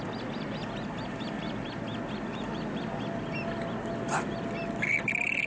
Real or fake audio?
real